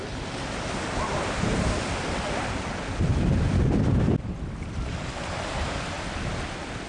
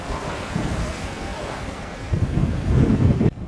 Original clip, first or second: first